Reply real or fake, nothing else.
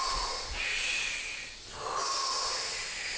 real